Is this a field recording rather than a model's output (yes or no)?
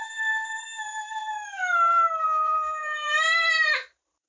no